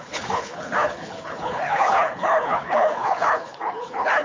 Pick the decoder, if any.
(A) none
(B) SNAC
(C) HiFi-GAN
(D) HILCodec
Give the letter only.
D